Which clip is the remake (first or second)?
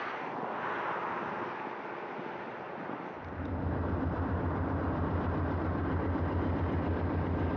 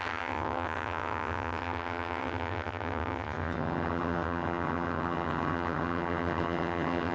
second